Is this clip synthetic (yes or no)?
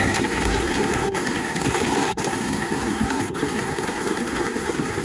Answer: yes